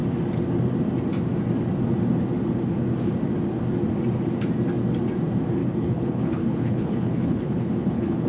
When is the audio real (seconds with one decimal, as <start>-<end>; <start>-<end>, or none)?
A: 0.0-5.6